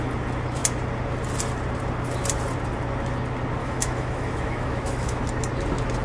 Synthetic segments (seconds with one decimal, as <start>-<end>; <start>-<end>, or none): 3.6-5.2